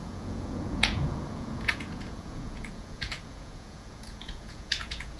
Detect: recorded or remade remade